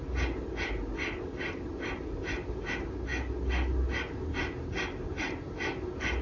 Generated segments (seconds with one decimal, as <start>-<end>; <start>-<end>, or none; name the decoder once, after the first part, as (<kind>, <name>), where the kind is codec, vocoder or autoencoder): none